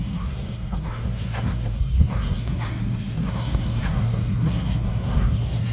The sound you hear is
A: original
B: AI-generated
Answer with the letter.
B